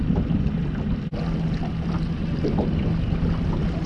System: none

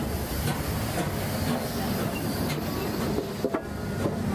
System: none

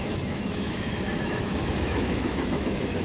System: autoencoder, DAC-VAE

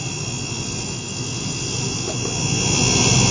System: none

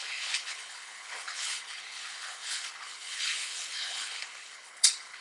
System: codec, HILCodec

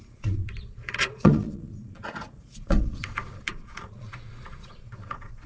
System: vocoder, Vocos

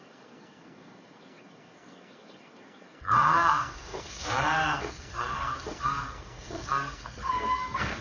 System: codec, SNAC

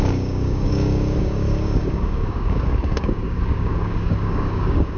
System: codec, DAC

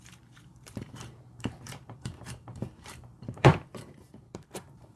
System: vocoder, BigVGAN v2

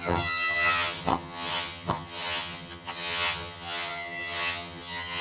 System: vocoder, HiFi-GAN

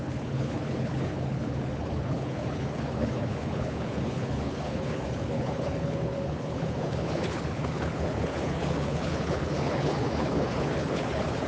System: codec, HILCodec